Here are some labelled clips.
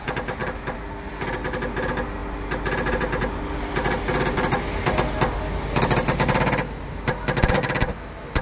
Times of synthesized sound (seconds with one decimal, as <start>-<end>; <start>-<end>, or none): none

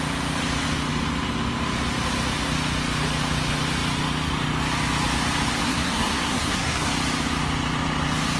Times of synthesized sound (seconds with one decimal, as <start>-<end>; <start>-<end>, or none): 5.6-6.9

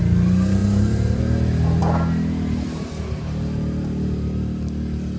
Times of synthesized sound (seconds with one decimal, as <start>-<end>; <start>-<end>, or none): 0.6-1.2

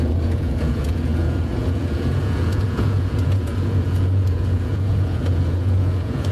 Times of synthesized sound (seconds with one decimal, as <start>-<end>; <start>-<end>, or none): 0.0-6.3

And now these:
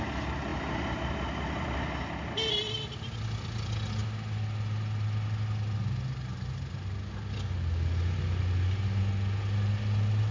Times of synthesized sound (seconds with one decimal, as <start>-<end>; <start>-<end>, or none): none

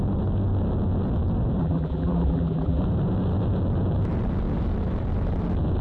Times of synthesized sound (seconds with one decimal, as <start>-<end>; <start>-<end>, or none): 1.6-2.8

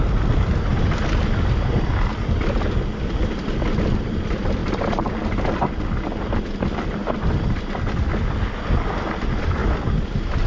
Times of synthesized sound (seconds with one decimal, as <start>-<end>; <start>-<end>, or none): 4.6-5.1; 7.0-7.8

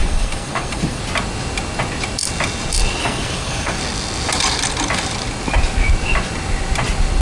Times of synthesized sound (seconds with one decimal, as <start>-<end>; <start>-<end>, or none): 0.0-1.0; 3.0-3.8